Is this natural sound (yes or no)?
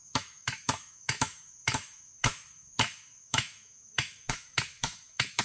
no